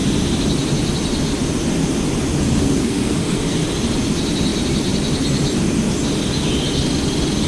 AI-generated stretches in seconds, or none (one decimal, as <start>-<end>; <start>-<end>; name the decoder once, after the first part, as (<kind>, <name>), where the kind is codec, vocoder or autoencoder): 2.4-3.6 (codec, SNAC)